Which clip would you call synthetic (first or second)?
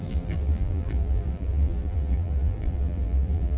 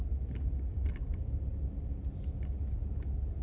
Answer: first